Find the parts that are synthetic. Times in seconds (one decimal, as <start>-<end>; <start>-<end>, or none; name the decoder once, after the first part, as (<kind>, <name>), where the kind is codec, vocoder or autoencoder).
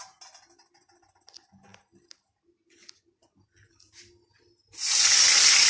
none